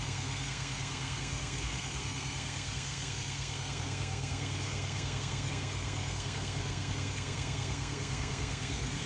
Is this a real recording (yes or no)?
no